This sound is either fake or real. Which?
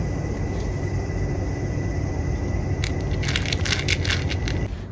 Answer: real